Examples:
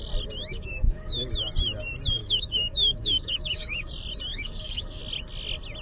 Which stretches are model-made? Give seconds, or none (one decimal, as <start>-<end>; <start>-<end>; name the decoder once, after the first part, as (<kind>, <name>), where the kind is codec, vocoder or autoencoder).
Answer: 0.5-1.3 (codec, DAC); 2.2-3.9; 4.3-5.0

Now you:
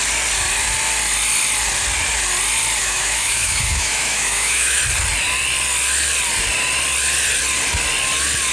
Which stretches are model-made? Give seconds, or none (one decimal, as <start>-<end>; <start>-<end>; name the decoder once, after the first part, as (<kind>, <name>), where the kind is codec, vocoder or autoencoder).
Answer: 2.8-4.8 (autoencoder, DAC-VAE)

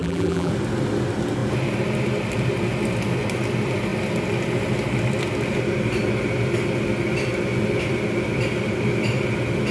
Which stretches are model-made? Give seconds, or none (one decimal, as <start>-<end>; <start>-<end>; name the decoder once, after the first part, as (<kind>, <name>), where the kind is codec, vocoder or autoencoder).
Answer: 0.0-0.5 (vocoder, BigVGAN v2)

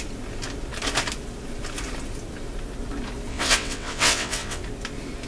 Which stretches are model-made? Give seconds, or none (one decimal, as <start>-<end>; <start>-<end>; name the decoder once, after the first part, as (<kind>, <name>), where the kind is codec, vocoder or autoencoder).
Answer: 3.3-4.6 (vocoder, WaveNeXt)

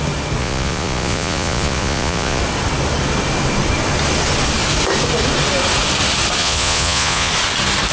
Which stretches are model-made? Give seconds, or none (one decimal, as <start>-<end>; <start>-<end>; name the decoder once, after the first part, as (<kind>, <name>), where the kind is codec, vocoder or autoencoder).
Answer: 0.4-2.4 (vocoder, Vocos); 6.4-7.3

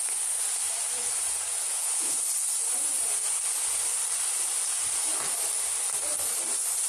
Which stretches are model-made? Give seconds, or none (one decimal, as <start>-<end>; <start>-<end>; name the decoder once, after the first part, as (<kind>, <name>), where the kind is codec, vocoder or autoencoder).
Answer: 1.7-2.2 (vocoder, Vocos)